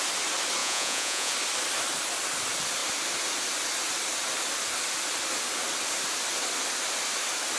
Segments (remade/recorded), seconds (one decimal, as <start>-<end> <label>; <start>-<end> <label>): 0.0-0.6 recorded; 0.6-1.3 remade; 1.3-7.6 recorded